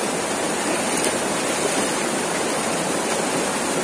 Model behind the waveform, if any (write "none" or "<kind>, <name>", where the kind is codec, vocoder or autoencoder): none